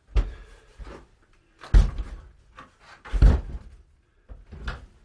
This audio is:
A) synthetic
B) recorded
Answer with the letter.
B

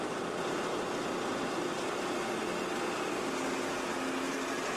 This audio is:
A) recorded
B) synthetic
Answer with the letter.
A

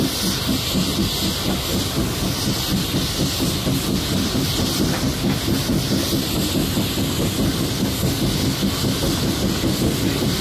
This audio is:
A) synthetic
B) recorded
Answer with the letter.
B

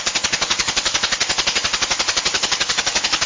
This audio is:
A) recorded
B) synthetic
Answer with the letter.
A